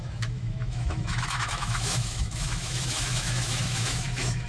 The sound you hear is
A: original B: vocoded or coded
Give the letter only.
B